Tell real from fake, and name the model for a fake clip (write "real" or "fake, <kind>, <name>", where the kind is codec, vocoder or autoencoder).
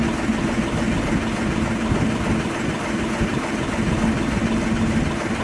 real